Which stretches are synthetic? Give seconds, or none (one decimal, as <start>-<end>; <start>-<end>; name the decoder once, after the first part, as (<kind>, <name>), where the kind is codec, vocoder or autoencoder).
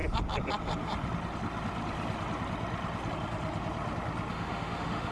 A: 4.3-5.1 (autoencoder, DAC-VAE)